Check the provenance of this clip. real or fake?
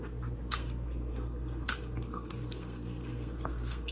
fake